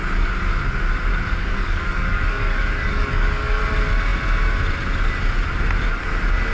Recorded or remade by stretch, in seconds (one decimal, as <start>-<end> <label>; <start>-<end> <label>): 0.0-1.4 recorded; 1.4-3.6 remade; 3.6-6.5 recorded